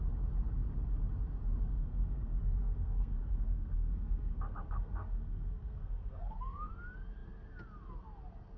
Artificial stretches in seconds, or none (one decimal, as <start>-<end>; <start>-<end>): 1.7-6.7